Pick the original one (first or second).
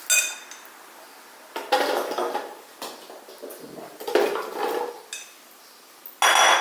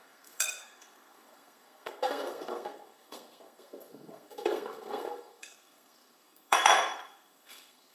first